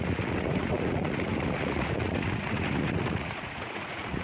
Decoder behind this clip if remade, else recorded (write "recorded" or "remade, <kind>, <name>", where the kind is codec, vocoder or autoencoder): remade, vocoder, Vocos